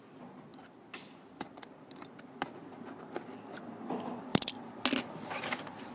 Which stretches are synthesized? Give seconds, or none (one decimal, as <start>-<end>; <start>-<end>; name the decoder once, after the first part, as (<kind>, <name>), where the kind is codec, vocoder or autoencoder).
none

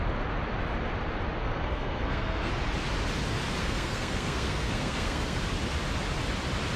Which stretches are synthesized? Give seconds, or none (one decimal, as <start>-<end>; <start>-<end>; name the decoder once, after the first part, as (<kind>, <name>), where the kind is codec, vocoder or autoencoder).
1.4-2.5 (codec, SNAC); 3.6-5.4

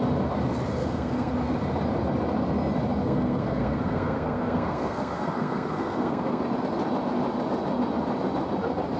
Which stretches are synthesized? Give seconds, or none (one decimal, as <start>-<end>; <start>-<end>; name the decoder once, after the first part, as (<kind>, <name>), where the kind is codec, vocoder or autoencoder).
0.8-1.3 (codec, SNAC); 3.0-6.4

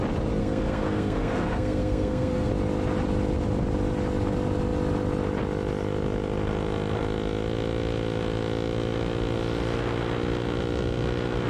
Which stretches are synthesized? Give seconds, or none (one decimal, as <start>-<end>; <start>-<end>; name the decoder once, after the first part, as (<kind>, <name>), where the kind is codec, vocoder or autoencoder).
0.4-2.5 (codec, SNAC)